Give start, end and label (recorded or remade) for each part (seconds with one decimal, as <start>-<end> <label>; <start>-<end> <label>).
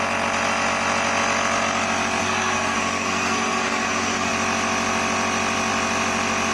0.0-2.2 recorded; 2.2-4.3 remade; 4.3-6.5 recorded